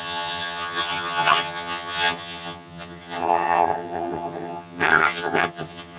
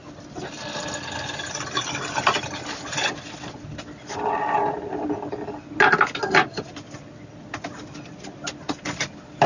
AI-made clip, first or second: first